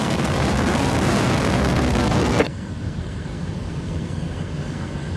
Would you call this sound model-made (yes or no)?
yes